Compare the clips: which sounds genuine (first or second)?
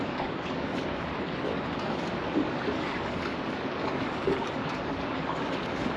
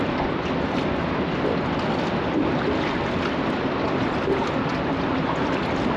second